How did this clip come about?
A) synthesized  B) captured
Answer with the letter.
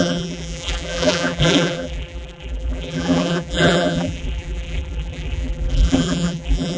A